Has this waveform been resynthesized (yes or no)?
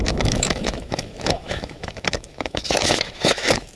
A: yes